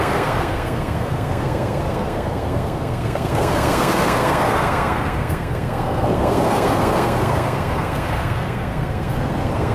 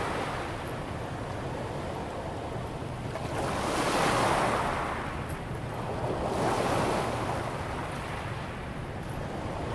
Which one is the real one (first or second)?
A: second